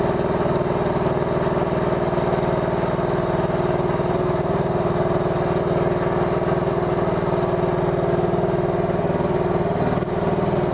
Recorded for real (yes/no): yes